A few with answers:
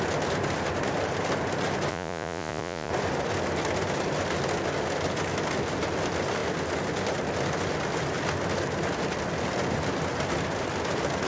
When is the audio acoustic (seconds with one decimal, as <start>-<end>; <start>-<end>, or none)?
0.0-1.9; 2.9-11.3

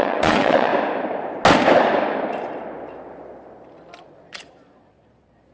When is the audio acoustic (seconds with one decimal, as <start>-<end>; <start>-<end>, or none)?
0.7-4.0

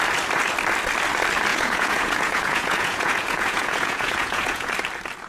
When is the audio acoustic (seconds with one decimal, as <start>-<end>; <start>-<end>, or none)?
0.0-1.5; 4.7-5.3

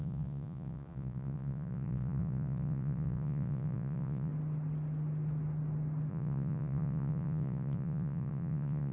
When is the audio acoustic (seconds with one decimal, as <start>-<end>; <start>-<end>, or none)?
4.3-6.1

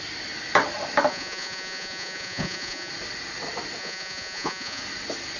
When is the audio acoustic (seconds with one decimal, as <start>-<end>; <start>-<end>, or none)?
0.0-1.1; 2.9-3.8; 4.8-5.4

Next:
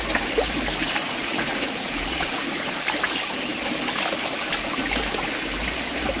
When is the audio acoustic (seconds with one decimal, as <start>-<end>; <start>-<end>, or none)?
0.0-1.0; 2.8-6.2